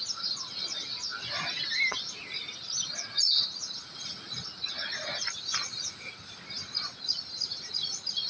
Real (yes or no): yes